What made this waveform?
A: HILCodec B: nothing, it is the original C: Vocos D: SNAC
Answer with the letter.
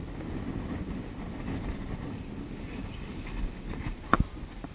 B